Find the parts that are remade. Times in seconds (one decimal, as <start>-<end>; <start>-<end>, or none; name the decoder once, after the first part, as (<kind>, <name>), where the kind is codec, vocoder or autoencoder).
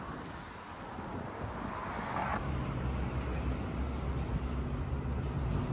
2.2-2.7 (vocoder, BigVGAN v2)